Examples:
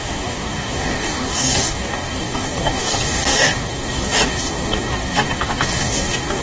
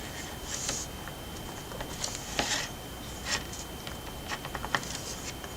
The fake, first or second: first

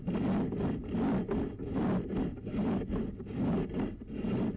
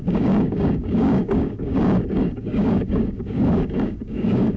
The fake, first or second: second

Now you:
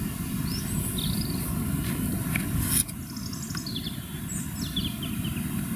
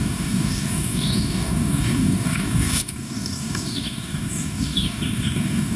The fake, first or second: second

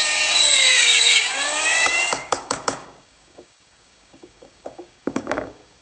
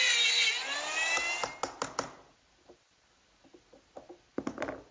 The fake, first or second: first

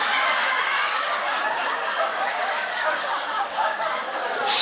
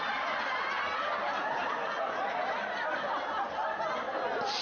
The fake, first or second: first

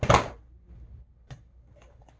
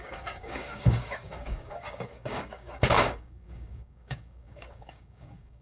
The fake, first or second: second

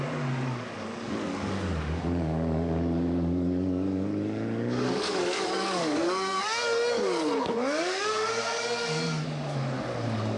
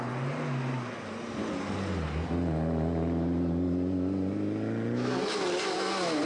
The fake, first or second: first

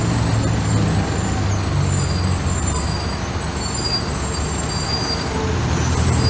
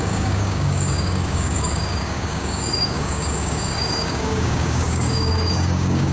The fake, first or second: second